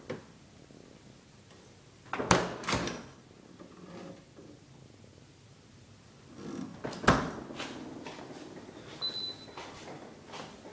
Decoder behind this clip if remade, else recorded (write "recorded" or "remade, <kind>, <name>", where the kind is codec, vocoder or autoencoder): recorded